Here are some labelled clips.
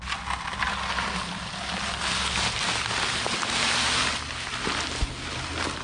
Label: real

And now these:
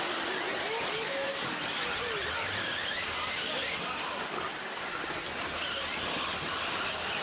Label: real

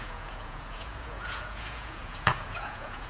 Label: fake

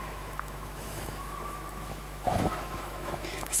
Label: fake